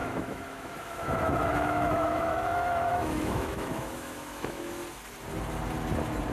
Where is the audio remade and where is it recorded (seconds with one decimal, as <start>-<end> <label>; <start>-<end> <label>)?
0.0-4.8 remade; 4.8-6.3 recorded